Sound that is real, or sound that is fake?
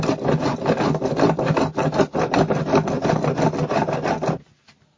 real